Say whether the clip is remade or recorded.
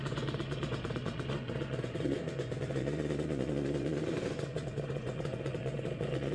remade